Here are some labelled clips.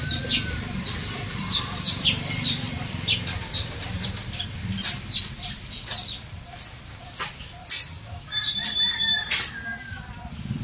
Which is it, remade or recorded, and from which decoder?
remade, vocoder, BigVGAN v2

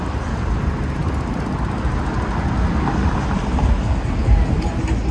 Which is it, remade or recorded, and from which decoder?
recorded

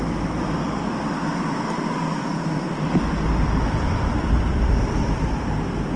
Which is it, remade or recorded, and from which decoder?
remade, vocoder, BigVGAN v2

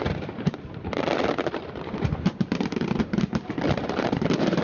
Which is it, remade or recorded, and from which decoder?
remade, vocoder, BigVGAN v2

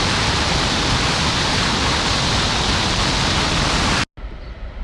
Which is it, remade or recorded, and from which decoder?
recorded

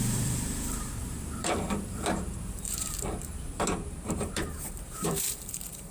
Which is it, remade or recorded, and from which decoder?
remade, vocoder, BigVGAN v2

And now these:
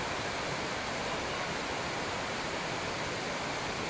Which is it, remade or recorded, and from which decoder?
recorded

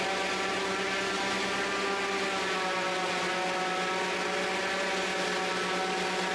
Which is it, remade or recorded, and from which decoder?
recorded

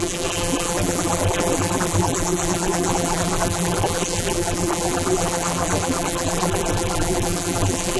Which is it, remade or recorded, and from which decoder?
remade, vocoder, BigVGAN v2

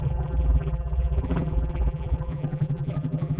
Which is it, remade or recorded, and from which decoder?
remade, vocoder, BigVGAN v2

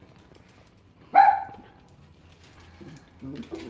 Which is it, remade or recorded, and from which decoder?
recorded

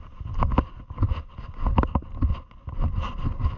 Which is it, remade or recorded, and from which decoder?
recorded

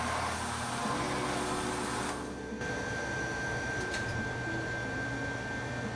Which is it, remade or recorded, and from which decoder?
recorded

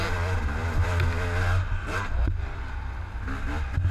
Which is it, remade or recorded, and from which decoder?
recorded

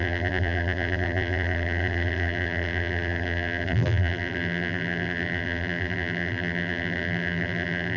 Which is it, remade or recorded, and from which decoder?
remade, vocoder, BigVGAN v2